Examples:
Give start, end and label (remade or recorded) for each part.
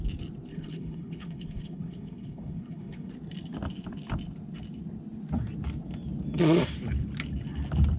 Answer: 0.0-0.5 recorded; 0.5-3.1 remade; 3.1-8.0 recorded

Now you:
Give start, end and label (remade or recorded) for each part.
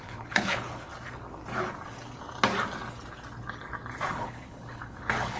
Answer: 0.0-0.9 remade; 0.9-4.1 recorded; 4.1-5.4 remade